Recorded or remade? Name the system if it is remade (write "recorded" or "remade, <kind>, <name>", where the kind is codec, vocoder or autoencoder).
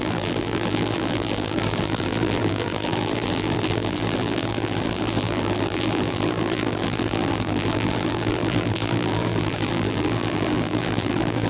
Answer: remade, vocoder, BigVGAN v2